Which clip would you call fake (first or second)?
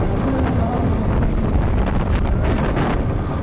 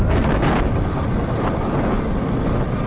first